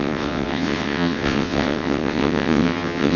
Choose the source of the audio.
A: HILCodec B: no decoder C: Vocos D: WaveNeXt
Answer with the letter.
D